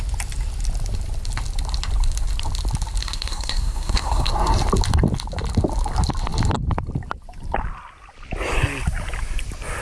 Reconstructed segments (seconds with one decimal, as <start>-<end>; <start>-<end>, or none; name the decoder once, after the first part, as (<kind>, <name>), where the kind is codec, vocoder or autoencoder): 3.0-4.3 (codec, SNAC)

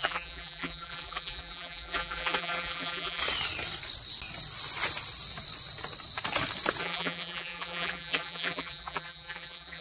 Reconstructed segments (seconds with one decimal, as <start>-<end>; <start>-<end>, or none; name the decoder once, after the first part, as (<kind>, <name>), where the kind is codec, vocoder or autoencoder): 0.0-3.2 (vocoder, BigVGAN v2); 6.8-9.8